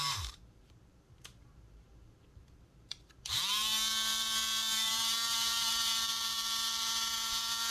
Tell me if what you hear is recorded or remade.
remade